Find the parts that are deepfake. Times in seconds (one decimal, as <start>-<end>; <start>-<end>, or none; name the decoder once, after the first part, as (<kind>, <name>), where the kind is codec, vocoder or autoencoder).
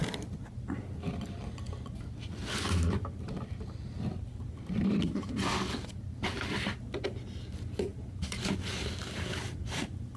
none